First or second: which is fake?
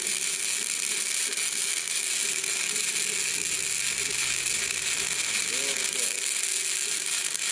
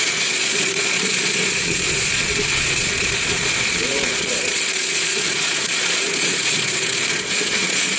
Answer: second